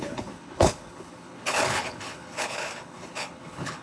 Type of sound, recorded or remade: remade